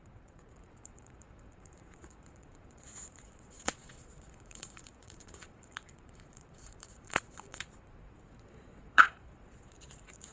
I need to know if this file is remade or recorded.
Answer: remade